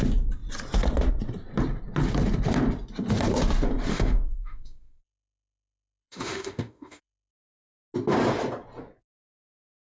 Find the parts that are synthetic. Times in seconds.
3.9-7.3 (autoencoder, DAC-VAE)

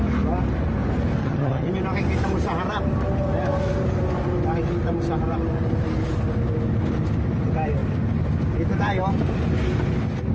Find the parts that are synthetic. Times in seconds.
1.2-1.7 (vocoder, HiFi-GAN)

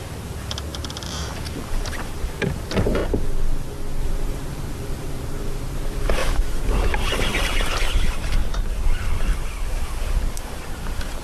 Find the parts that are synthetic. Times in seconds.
0.0-3.0 (vocoder, BigVGAN v2); 4.0-8.4; 9.7-11.2

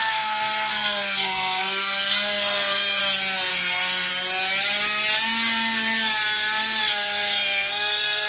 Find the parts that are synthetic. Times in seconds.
0.0-3.0 (codec, SNAC); 3.5-4.1; 6.8-8.3

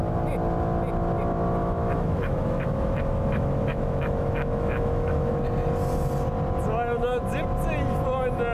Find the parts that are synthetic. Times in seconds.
1.6-5.3 (autoencoder, DAC-VAE)

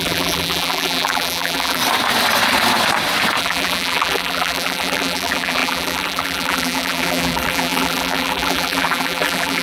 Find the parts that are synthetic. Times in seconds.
0.0-1.8 (vocoder, BigVGAN v2); 3.4-9.6

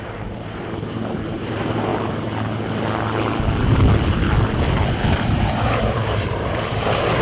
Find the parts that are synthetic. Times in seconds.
0.0-1.9 (vocoder, BigVGAN v2); 4.9-7.2

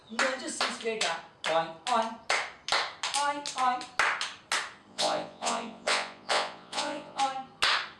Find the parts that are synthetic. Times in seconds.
4.9-7.2 (vocoder, Vocos)